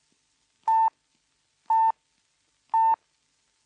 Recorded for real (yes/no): yes